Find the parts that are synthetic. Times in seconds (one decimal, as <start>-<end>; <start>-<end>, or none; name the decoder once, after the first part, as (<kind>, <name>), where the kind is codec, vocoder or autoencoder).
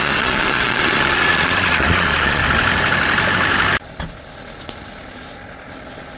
0.0-2.4 (vocoder, Vocos)